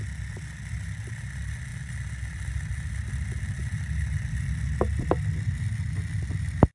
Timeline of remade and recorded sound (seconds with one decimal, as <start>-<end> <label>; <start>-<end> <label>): 0.0-6.7 recorded